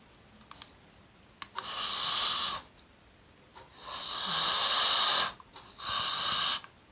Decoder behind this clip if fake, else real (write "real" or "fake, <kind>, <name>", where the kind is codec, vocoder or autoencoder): real